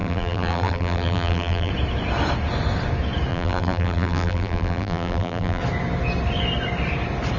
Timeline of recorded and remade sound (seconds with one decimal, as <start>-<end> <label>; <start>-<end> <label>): 0.0-1.7 remade; 1.7-3.3 recorded; 3.3-5.6 remade; 5.6-7.4 recorded